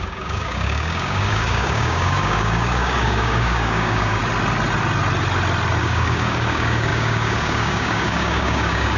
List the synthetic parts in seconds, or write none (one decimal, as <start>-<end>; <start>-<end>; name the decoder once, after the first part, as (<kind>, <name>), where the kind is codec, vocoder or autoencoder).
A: 0.0-4.2 (codec, DAC); 5.8-9.0